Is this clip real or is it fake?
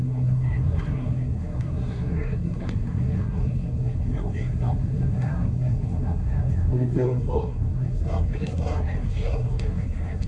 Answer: fake